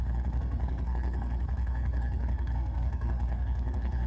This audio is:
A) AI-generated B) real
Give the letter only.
A